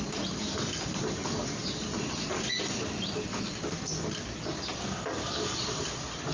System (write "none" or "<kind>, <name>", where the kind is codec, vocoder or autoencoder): none